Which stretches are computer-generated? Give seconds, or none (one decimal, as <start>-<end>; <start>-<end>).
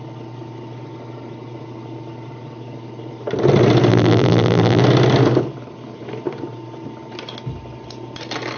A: 3.9-4.8